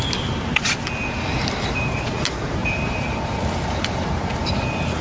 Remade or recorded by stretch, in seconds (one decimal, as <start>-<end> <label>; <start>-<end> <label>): 0.0-1.3 recorded; 1.3-2.0 remade; 2.0-2.6 recorded; 2.6-4.5 remade; 4.5-5.0 recorded